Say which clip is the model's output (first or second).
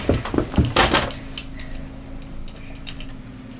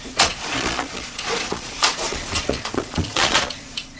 second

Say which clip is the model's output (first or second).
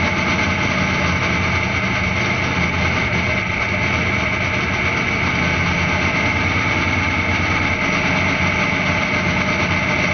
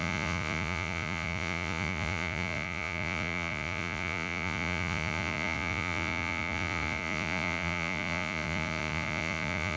second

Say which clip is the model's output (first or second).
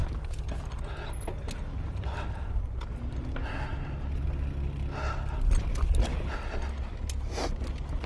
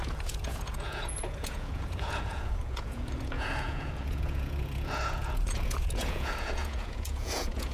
second